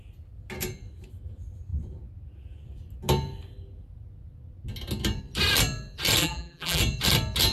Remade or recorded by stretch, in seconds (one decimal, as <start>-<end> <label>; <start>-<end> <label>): 0.0-6.2 recorded; 6.2-6.8 remade; 6.8-7.5 recorded